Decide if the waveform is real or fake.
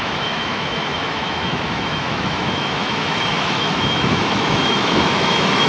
fake